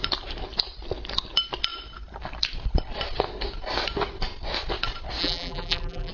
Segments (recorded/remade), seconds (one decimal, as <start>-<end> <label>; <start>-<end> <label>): 0.0-5.2 recorded; 5.2-6.1 remade